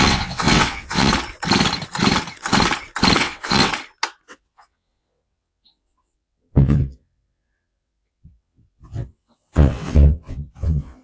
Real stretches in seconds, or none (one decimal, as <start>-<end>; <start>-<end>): 1.1-3.2; 3.7-4.3